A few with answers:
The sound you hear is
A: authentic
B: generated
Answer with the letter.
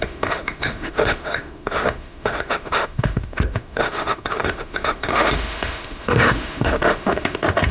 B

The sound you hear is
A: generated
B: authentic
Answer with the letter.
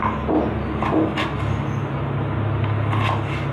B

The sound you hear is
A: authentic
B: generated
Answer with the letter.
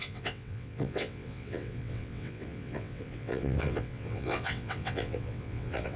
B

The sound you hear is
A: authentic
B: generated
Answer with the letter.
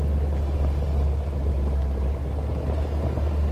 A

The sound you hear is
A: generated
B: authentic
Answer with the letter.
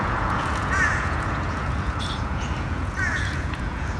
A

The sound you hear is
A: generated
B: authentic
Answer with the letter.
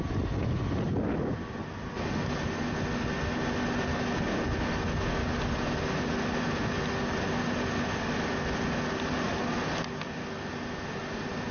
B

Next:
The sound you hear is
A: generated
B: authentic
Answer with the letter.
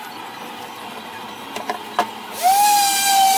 B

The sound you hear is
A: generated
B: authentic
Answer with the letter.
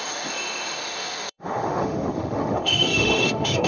A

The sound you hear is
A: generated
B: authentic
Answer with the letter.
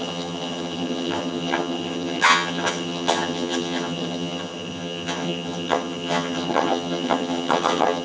A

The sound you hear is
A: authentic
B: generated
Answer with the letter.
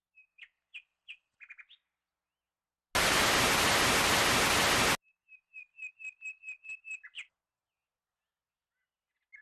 A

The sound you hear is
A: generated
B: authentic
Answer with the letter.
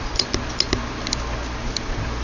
B